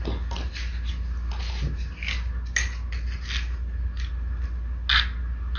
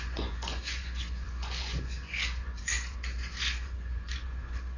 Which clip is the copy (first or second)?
second